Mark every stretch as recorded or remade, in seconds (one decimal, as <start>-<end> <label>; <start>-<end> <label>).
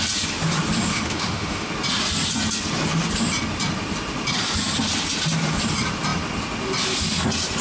0.0-0.9 recorded; 0.9-1.7 remade; 1.7-7.6 recorded